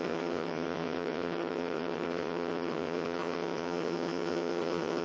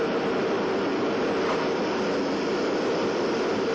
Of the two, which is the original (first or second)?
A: second